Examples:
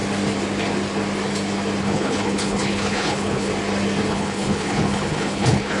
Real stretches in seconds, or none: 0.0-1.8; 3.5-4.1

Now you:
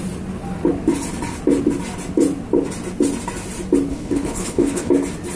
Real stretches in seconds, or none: 0.0-3.9; 4.9-5.4

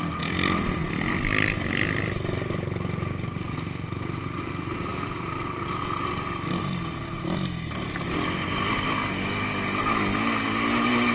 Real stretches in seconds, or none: 0.0-11.1